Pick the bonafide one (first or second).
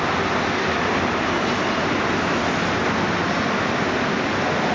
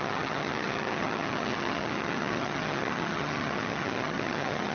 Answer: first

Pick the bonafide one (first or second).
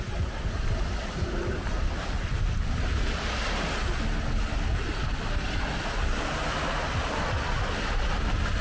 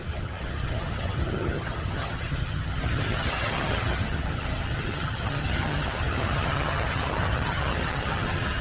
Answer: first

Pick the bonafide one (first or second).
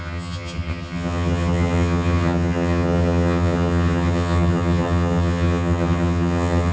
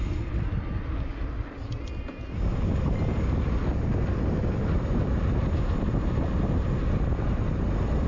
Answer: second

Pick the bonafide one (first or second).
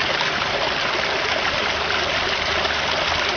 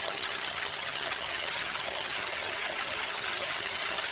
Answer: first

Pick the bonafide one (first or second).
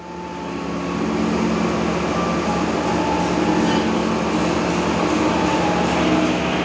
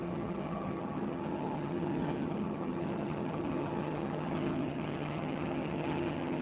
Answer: first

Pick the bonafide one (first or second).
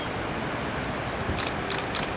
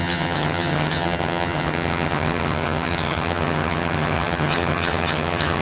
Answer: first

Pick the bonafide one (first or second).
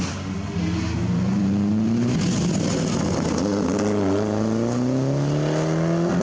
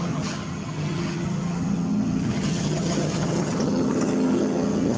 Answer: first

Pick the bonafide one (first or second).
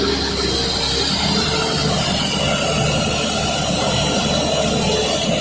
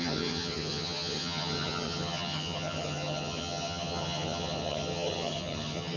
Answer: first